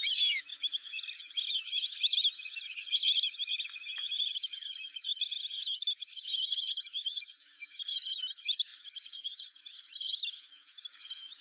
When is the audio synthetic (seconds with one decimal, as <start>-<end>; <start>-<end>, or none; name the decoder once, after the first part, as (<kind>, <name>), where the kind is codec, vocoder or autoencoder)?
0.0-11.4 (autoencoder, DAC-VAE)